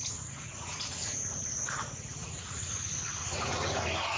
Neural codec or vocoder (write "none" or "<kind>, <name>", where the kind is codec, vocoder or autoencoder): vocoder, Vocos